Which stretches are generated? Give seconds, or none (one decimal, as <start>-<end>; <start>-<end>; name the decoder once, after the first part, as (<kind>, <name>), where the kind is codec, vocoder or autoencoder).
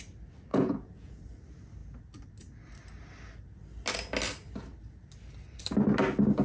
0.5-1.2 (vocoder, Vocos)